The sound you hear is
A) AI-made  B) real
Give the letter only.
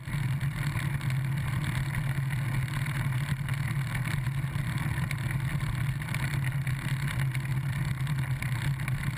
B